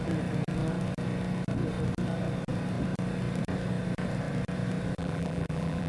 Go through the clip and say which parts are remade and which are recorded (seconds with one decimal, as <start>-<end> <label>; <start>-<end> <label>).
0.0-5.0 recorded; 5.0-5.9 remade